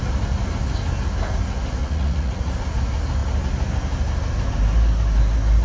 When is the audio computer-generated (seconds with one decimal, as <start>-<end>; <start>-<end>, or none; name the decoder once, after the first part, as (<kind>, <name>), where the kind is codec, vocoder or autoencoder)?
1.8-2.5 (vocoder, Vocos)